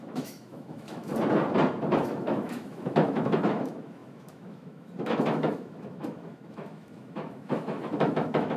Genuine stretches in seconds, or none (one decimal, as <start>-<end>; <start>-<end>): 1.1-1.9